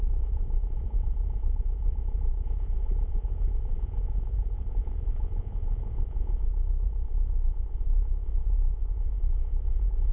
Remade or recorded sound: remade